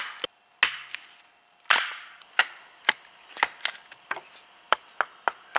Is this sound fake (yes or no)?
no